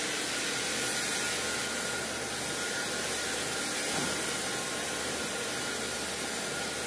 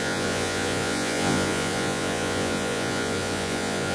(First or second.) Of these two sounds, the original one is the first